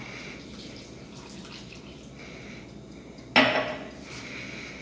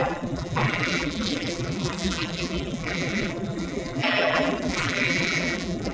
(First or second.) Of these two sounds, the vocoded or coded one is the second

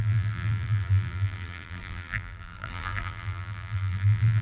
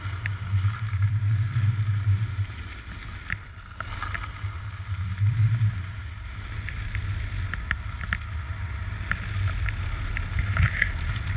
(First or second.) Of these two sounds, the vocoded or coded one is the first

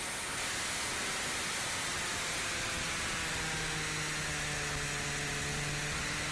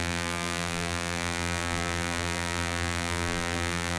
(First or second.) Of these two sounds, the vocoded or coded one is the second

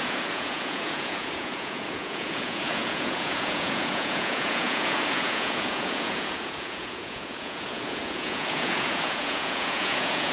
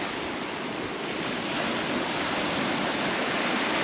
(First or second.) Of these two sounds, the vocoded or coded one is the first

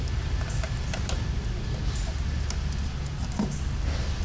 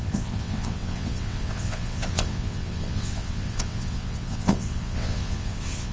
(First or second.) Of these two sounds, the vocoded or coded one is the second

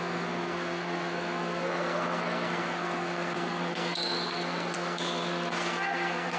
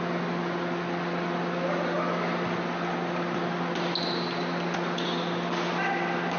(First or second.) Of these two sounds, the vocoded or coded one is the first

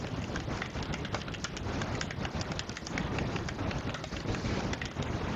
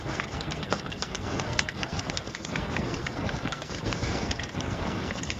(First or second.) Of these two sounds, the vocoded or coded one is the second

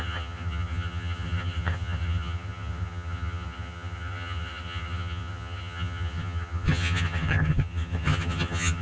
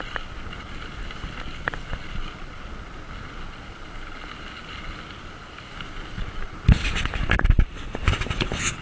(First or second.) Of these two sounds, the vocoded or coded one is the first